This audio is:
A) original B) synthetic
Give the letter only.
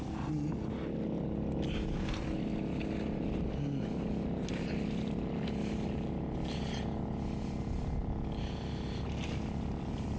A